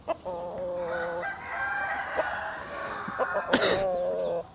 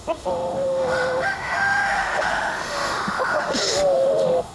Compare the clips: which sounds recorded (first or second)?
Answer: first